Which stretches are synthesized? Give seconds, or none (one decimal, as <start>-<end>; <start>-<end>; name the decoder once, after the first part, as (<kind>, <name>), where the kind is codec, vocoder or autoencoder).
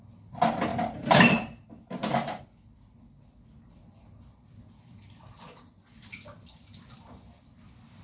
0.7-2.4 (vocoder, BigVGAN v2)